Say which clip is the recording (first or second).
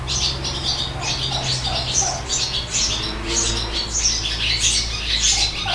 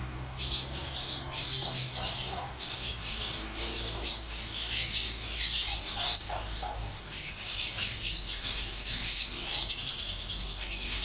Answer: first